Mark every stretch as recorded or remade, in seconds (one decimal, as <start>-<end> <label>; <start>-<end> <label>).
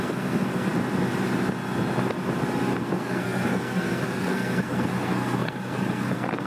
0.0-0.7 remade; 0.7-2.8 recorded; 2.8-6.5 remade